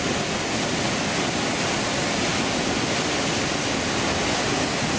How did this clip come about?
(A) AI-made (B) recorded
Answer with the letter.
B